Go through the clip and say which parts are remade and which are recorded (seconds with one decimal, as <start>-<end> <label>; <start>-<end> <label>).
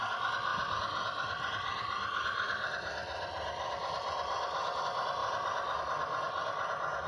0.0-7.1 recorded